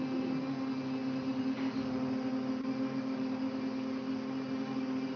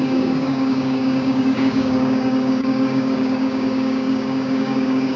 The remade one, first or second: second